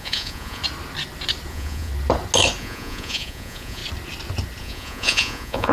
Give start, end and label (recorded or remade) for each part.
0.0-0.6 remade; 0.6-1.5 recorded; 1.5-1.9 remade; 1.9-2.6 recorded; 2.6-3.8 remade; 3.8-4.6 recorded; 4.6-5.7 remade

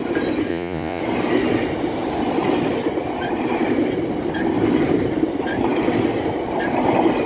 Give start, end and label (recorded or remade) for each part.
0.0-0.5 recorded; 0.5-1.0 remade; 1.0-7.3 recorded

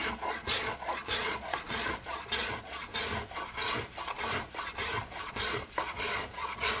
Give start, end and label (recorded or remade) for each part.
0.0-2.9 remade; 2.9-5.3 recorded; 5.3-6.8 remade

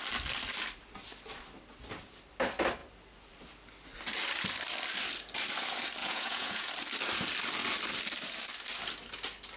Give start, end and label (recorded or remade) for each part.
0.0-6.0 recorded; 6.0-6.7 remade; 6.7-9.6 recorded